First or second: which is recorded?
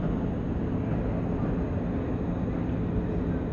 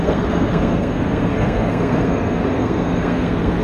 first